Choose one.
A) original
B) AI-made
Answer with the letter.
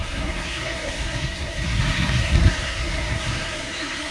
B